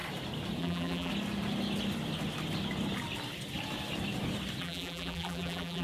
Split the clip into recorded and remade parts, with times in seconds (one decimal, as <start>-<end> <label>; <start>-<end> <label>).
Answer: 0.0-0.6 recorded; 0.6-1.1 remade; 1.1-4.6 recorded; 4.6-5.8 remade